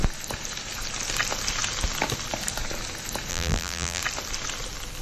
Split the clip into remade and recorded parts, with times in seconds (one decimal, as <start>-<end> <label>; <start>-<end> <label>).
0.0-3.3 recorded; 3.3-4.0 remade; 4.0-5.0 recorded